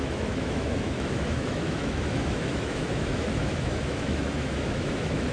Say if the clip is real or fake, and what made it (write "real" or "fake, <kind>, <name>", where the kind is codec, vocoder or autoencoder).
fake, autoencoder, DAC-VAE